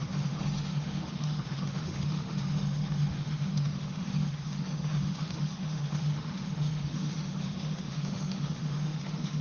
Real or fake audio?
fake